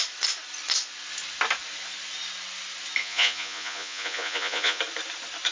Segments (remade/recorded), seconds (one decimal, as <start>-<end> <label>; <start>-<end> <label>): 0.0-3.0 recorded; 3.0-4.8 remade; 4.8-5.5 recorded